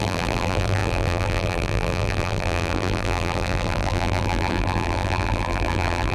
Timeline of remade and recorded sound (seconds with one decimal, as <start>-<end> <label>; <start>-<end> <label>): 0.0-6.1 remade